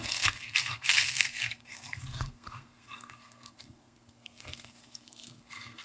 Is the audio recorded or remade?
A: remade